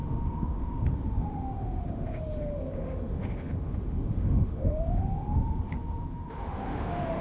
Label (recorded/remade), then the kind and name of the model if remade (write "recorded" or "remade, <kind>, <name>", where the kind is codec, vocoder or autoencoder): remade, autoencoder, DAC-VAE